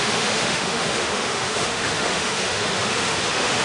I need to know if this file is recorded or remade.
remade